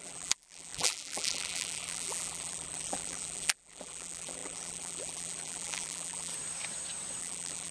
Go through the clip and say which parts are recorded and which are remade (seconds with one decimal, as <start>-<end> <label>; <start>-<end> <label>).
0.0-6.3 remade; 6.3-7.2 recorded; 7.2-7.7 remade